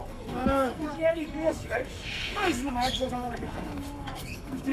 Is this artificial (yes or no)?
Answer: yes